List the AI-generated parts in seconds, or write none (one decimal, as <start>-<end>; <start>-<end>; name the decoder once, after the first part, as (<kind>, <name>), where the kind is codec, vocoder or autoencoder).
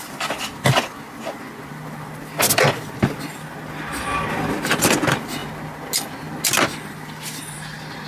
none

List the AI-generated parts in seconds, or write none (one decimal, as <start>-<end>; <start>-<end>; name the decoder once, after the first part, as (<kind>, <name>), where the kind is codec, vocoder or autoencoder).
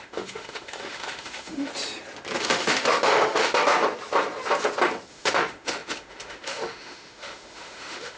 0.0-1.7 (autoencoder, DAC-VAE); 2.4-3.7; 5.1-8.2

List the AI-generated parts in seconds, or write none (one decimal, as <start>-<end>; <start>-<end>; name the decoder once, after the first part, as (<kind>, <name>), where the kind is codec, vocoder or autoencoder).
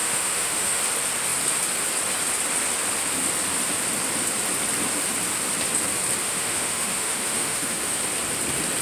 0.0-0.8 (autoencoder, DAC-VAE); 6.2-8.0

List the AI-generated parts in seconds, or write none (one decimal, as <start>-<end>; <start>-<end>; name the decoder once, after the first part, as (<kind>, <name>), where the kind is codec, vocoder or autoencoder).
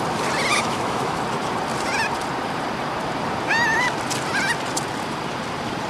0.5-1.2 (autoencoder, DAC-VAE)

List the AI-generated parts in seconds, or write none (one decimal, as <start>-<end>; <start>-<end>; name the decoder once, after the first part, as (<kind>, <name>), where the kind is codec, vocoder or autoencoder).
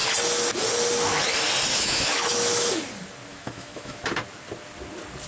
1.7-2.7 (autoencoder, DAC-VAE); 3.3-4.0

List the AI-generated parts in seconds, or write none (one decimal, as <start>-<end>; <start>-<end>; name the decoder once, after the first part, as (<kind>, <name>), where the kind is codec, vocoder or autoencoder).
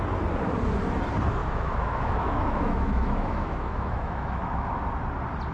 1.4-4.7 (autoencoder, DAC-VAE)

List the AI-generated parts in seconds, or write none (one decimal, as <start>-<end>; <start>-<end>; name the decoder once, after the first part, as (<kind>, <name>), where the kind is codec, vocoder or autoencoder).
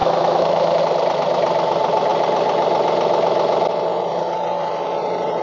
0.0-0.8 (autoencoder, DAC-VAE)